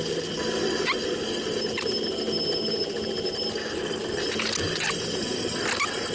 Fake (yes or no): no